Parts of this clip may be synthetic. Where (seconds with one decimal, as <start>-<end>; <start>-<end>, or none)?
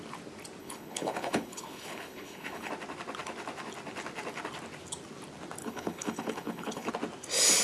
0.6-2.7; 5.6-6.9